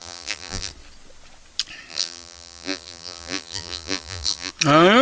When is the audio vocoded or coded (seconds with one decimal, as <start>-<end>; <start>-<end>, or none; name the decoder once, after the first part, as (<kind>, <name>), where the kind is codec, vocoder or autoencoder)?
0.0-0.7 (vocoder, BigVGAN v2); 1.9-4.5

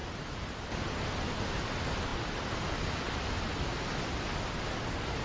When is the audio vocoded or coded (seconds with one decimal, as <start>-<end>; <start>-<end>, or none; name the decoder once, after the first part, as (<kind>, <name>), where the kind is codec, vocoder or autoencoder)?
none

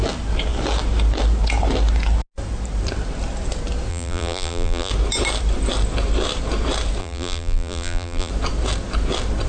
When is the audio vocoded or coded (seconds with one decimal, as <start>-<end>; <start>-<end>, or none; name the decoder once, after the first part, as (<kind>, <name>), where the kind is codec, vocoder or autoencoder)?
3.9-4.9 (vocoder, BigVGAN v2); 7.0-8.3